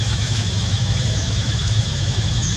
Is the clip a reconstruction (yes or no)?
yes